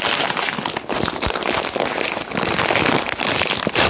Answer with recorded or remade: recorded